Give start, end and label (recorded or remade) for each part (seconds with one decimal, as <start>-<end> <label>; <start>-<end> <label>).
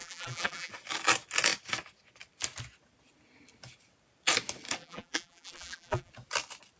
0.0-0.7 remade; 0.7-4.8 recorded; 4.8-6.1 remade; 6.1-6.8 recorded